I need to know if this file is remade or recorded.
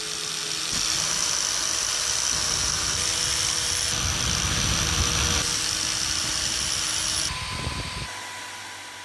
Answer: recorded